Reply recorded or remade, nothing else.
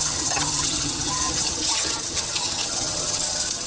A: remade